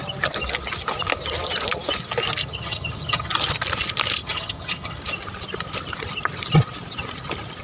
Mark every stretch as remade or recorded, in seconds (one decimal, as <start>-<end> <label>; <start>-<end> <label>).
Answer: 0.0-2.4 recorded; 2.4-3.3 remade; 3.3-4.2 recorded; 4.2-5.0 remade; 5.0-7.6 recorded